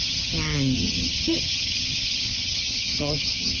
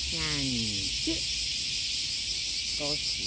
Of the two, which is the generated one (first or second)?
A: first